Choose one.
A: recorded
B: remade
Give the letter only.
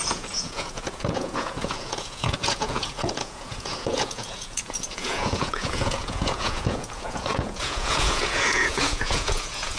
B